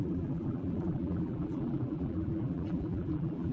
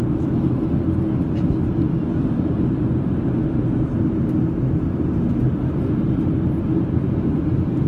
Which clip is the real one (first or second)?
second